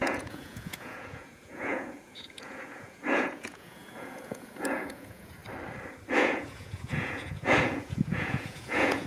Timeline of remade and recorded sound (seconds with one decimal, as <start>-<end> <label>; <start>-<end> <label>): 0.0-5.4 remade; 5.4-6.1 recorded; 6.1-9.1 remade